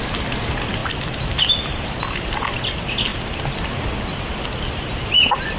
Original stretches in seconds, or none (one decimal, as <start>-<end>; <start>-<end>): 0.0-5.6

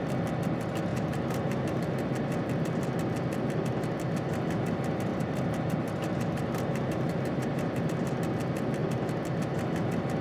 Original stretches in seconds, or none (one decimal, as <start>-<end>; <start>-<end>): 0.0-0.9; 1.8-5.1; 7.8-10.2

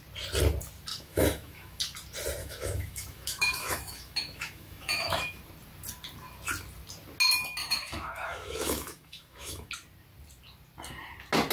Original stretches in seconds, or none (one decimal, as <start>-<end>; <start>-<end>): 0.0-0.9; 1.8-2.4; 5.4-7.6; 9.7-11.5

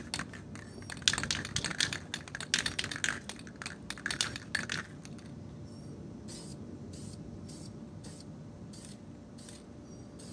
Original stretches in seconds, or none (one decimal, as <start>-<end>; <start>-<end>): 0.0-6.5; 9.3-10.3